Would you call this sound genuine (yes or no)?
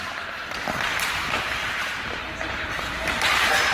no